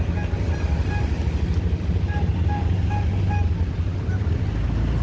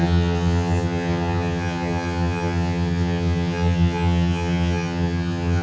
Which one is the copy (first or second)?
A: second